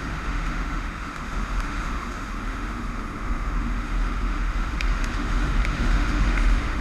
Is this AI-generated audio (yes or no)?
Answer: yes